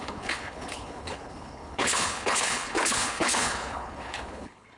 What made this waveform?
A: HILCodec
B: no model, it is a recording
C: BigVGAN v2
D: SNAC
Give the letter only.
A